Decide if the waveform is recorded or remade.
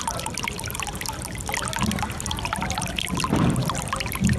recorded